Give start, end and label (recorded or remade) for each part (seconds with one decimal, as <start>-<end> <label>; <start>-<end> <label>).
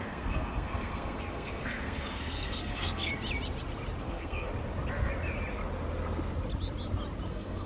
0.0-3.1 remade; 3.1-4.0 recorded; 4.0-4.5 remade; 4.5-7.3 recorded; 7.3-7.7 remade